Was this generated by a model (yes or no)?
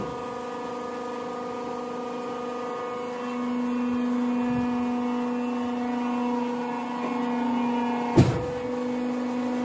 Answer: no